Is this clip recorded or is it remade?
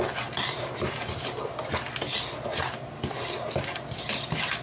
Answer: recorded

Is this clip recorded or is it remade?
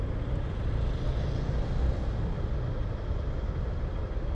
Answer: recorded